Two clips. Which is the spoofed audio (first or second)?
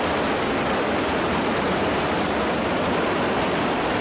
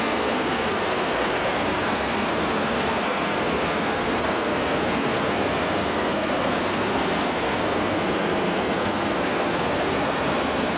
second